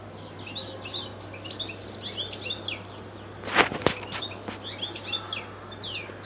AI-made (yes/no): no